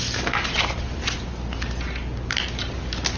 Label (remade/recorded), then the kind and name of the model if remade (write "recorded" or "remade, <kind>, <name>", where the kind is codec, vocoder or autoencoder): recorded